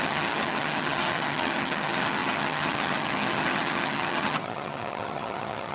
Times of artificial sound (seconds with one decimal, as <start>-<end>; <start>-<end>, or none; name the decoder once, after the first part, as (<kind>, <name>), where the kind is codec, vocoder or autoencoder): 0.0-5.7 (vocoder, HiFi-GAN)